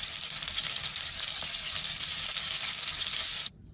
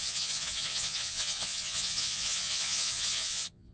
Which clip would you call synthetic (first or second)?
second